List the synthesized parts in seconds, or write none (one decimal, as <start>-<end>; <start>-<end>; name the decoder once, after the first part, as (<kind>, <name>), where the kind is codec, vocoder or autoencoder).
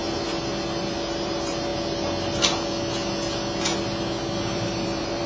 0.8-1.7 (vocoder, BigVGAN v2); 4.3-5.3